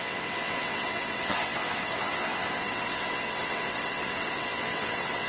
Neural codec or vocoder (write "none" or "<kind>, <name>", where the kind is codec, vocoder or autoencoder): vocoder, WaveNeXt